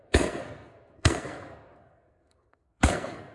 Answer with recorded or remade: remade